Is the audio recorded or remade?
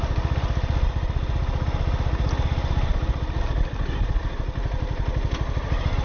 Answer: recorded